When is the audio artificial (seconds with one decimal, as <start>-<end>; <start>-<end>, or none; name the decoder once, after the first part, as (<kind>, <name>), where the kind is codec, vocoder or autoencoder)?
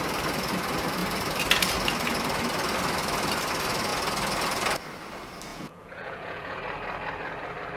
5.5-6.6 (vocoder, Vocos)